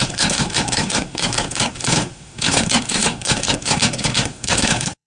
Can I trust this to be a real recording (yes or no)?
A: no